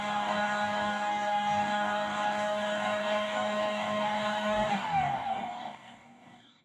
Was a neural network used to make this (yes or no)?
yes